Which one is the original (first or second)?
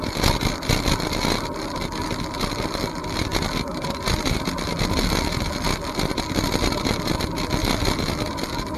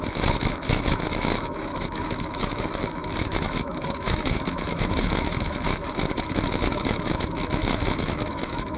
first